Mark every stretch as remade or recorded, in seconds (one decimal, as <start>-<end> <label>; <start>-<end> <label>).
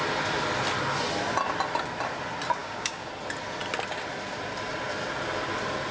0.0-2.6 recorded; 2.6-3.1 remade; 3.1-5.9 recorded